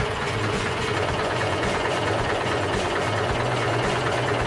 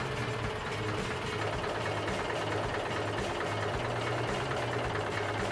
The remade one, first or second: first